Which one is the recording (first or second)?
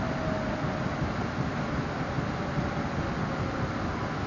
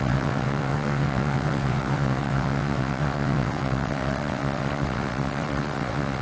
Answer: first